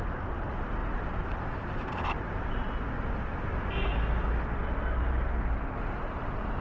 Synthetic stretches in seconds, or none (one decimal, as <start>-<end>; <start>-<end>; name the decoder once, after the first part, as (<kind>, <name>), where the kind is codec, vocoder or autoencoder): 0.0-0.8 (vocoder, BigVGAN v2); 1.5-2.6; 5.8-6.6